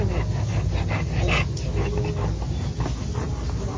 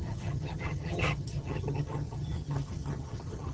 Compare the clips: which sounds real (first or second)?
first